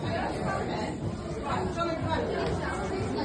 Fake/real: real